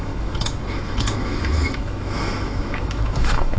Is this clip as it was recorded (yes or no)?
no